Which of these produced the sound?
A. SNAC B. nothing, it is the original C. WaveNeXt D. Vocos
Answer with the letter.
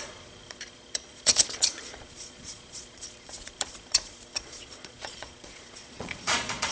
D